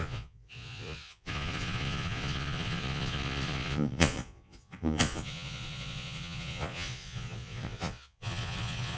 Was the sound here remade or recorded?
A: remade